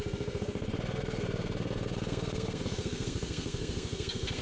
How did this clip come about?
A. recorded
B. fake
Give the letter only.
B